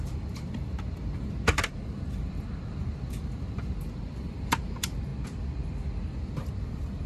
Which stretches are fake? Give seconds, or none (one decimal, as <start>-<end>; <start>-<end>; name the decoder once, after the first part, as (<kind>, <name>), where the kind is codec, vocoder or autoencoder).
0.0-5.1 (vocoder, BigVGAN v2); 6.2-7.1